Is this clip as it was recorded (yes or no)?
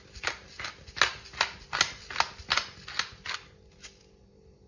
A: yes